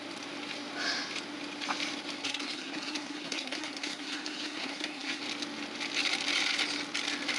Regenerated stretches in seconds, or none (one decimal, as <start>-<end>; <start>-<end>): 2.2-5.2